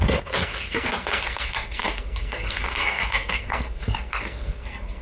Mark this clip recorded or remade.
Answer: remade